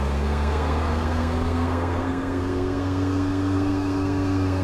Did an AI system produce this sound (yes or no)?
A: yes